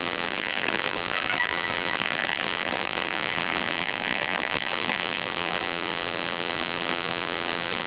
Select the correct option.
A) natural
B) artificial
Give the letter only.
B